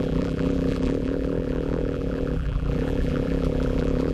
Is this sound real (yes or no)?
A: no